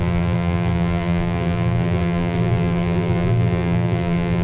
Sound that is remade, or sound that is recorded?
remade